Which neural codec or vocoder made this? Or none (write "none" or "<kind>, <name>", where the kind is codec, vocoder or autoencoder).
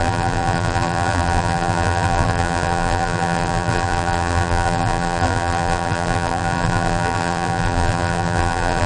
vocoder, BigVGAN v2